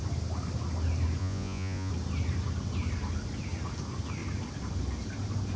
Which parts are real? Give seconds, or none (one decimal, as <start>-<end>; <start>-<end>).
0.0-1.2; 1.9-5.6